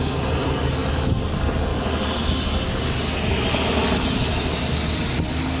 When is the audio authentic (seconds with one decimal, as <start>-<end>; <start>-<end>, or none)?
0.0-5.6